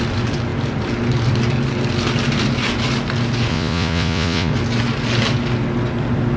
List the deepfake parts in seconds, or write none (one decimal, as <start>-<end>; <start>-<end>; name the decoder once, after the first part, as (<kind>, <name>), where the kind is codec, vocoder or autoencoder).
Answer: 3.5-4.5 (vocoder, Vocos)